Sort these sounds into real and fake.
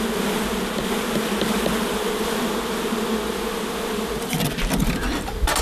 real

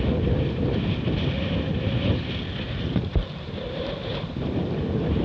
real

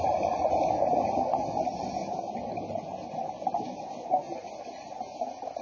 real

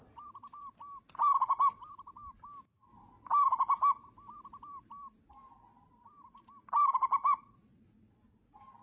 fake